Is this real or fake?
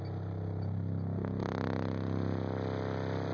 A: real